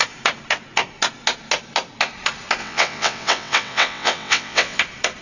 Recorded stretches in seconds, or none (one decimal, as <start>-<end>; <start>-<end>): 0.0-2.6; 4.8-5.2